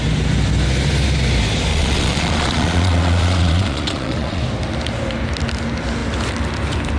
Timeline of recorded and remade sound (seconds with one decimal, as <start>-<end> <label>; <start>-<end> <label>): 0.0-1.7 recorded; 1.7-4.4 remade; 4.4-7.0 recorded